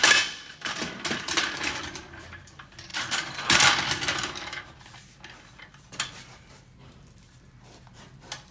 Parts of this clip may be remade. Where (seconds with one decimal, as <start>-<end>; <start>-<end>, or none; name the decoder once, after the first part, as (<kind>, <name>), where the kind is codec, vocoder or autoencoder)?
0.0-8.5 (vocoder, BigVGAN v2)